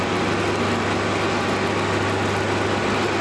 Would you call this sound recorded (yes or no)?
yes